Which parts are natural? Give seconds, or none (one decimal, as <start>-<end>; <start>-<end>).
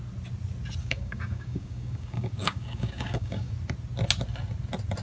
0.0-0.8; 3.5-5.0